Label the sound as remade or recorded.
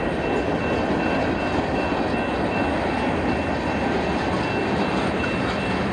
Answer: recorded